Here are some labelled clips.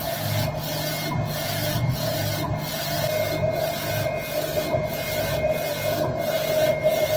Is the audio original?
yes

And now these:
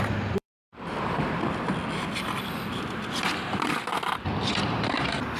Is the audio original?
no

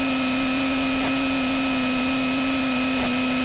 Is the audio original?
yes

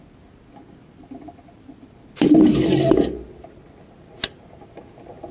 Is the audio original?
yes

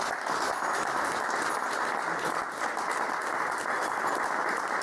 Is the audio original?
yes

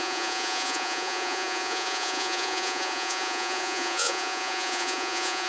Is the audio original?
no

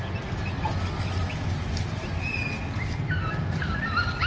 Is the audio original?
yes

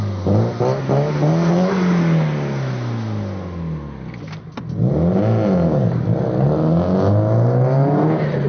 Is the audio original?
yes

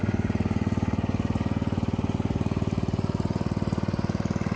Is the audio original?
yes